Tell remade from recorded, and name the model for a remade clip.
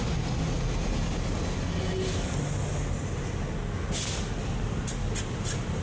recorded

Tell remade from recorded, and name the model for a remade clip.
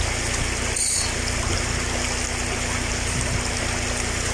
recorded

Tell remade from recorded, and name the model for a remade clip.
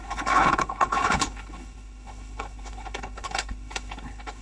remade, codec, HILCodec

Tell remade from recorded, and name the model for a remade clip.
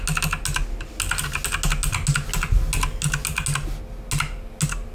recorded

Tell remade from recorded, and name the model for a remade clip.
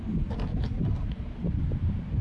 recorded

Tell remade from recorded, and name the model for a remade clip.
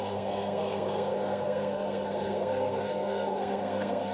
remade, codec, SNAC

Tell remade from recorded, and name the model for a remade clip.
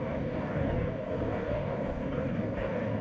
remade, codec, DAC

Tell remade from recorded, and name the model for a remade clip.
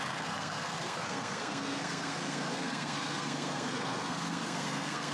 remade, codec, SNAC